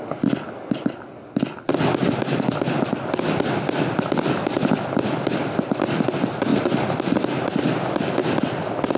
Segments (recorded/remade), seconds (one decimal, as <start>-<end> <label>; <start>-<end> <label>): 0.0-2.0 recorded; 2.0-3.2 remade; 3.2-6.5 recorded; 6.5-7.6 remade; 7.6-9.0 recorded